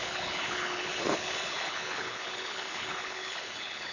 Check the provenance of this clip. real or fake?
fake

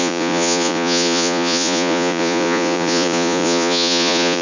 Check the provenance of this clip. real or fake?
fake